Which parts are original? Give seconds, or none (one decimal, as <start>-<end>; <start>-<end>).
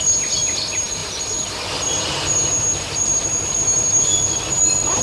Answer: 0.0-5.0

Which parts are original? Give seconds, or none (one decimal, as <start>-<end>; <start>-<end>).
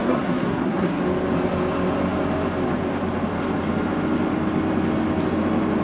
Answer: 1.0-5.8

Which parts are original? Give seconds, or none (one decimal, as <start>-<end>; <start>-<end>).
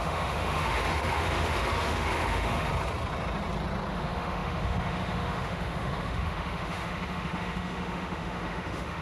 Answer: 2.7-3.9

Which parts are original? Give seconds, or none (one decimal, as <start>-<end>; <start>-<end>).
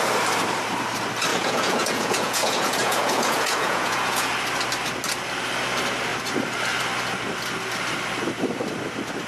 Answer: 0.0-1.3; 4.3-9.3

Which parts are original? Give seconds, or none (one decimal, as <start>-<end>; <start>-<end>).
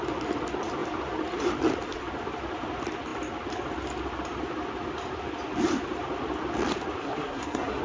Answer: 0.0-7.0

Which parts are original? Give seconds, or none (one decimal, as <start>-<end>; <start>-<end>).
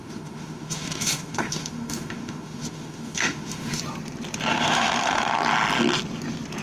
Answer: 3.8-4.5; 5.3-6.6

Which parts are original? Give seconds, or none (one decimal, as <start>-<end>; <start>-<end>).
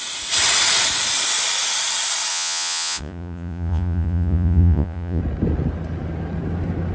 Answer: 0.0-2.3; 5.2-6.9